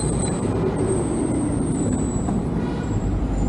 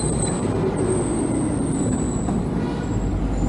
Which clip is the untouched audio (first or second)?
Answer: second